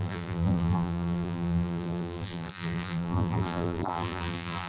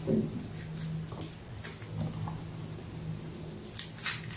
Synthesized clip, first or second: first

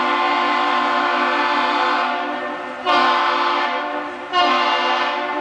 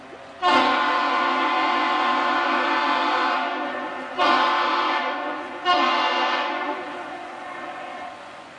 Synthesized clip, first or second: second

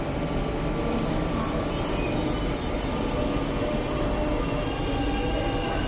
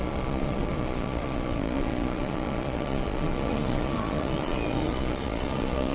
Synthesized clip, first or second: second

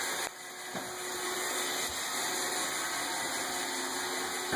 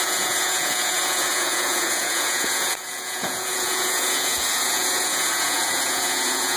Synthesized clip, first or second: second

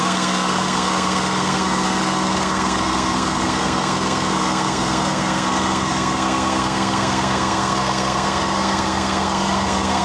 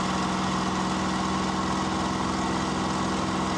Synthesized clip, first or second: first